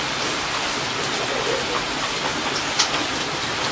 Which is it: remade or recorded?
recorded